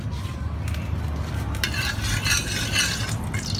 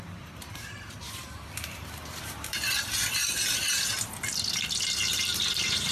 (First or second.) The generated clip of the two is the second